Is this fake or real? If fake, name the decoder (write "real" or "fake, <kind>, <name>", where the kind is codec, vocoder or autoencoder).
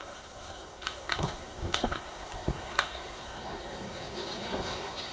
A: fake, codec, SNAC